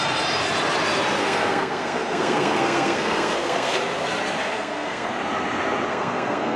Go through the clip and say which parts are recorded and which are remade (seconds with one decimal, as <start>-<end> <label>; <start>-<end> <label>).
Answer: 0.0-1.2 recorded; 1.2-3.8 remade; 3.8-4.4 recorded; 4.4-5.1 remade; 5.1-5.9 recorded; 5.9-6.6 remade